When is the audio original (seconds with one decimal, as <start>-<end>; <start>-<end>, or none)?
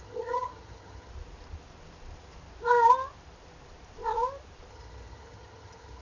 1.1-4.7